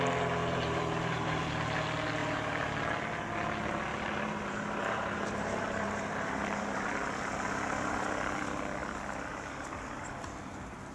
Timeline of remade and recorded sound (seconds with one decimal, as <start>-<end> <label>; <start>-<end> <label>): 0.0-0.4 recorded; 0.4-1.5 remade; 1.5-2.2 recorded; 2.2-2.7 remade; 2.7-3.9 recorded; 3.9-6.9 remade; 6.9-10.9 recorded